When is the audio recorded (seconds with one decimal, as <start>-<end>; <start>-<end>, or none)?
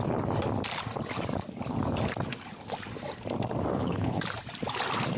0.0-3.7; 4.2-5.2